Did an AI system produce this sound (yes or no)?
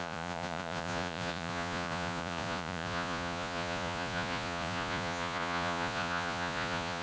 yes